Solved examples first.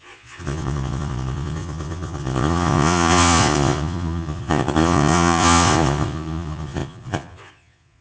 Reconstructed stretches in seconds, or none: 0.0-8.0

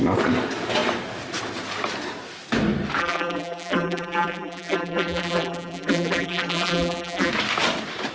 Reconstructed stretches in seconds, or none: 3.0-7.3

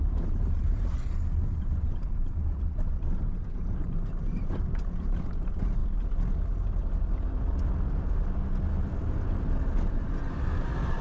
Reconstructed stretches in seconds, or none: 0.0-0.9; 1.6-5.8; 9.9-11.0

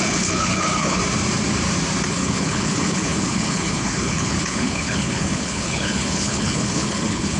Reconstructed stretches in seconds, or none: 0.0-1.0; 2.1-7.4

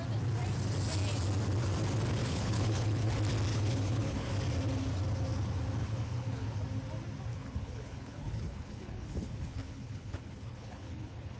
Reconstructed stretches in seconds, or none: 2.2-3.1; 3.5-4.3; 5.8-6.6; 7.3-11.4

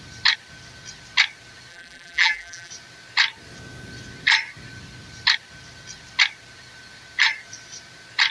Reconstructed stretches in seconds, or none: 1.7-2.7

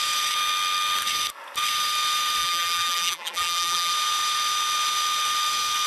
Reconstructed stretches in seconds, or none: 2.4-3.9